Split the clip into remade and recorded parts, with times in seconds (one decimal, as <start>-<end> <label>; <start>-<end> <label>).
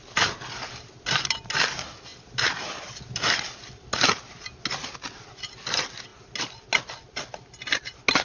0.0-8.2 recorded